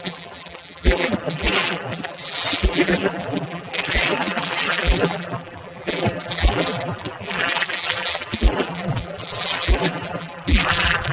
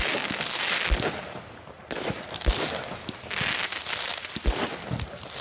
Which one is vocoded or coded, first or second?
first